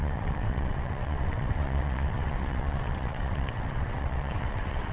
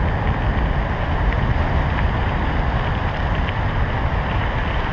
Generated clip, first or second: first